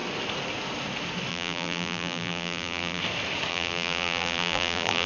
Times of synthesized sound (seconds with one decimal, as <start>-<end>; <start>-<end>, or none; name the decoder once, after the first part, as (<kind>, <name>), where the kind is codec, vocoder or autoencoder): 1.3-3.0 (vocoder, BigVGAN v2); 3.5-5.1